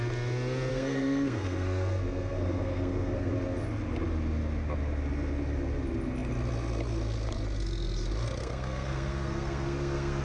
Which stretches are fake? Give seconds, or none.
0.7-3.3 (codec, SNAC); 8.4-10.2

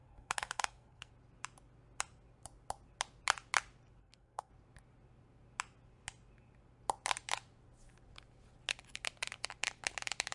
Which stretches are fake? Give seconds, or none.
0.0-1.1 (codec, SNAC); 4.0-4.5

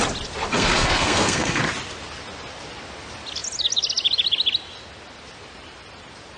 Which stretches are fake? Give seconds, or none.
0.5-1.6 (codec, SNAC)

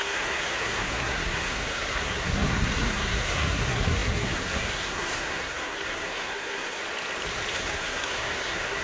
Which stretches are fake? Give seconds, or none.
0.0-6.8 (codec, SNAC); 7.5-8.8